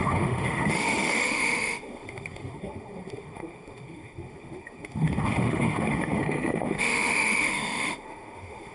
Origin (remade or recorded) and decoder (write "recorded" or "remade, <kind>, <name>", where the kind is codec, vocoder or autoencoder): remade, autoencoder, DAC-VAE